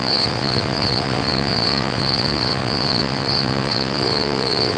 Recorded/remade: remade